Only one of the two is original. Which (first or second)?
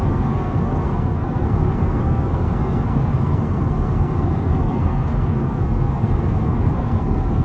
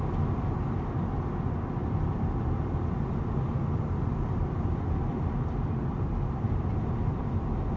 second